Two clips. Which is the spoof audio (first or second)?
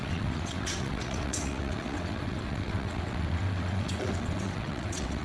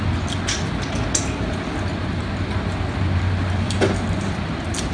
first